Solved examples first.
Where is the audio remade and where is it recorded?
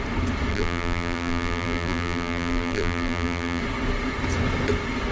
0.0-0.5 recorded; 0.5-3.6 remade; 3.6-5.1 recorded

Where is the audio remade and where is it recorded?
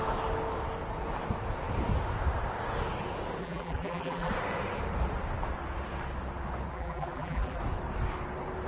0.0-3.4 recorded; 3.4-4.3 remade; 4.3-6.7 recorded; 6.7-7.6 remade; 7.6-8.7 recorded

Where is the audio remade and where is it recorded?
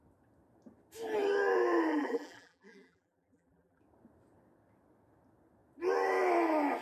0.0-1.9 recorded; 1.9-3.8 remade; 3.8-6.8 recorded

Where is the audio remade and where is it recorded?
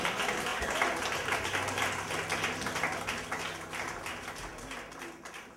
0.0-5.6 recorded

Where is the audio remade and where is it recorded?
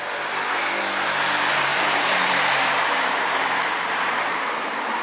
0.0-1.7 recorded; 1.7-5.0 remade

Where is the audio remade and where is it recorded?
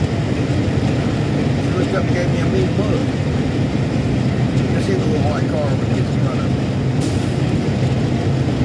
0.0-3.0 recorded; 3.0-4.7 remade; 4.7-8.6 recorded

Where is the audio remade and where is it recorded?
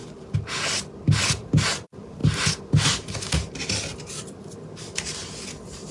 0.0-1.2 recorded; 1.2-2.2 remade; 2.2-5.5 recorded; 5.5-5.9 remade